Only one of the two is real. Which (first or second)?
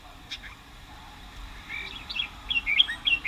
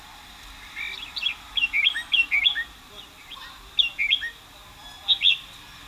second